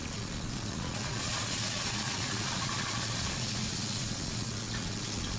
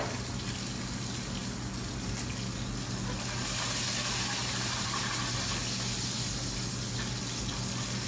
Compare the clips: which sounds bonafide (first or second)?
second